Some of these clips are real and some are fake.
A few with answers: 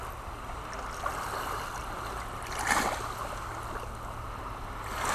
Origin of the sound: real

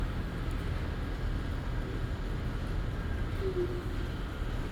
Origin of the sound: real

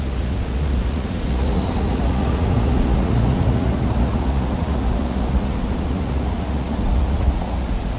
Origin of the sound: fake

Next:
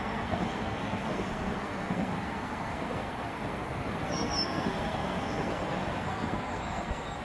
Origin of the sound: fake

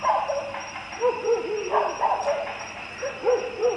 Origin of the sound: real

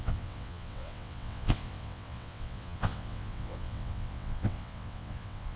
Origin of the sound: fake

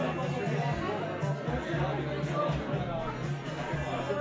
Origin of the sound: real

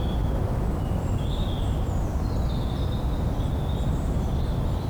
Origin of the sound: real